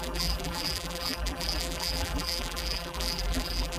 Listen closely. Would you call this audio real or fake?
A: fake